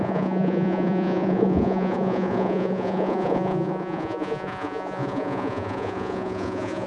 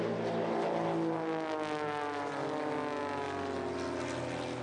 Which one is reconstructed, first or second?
first